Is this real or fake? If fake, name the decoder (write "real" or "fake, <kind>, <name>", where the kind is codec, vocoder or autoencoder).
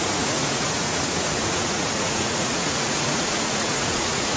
fake, vocoder, Vocos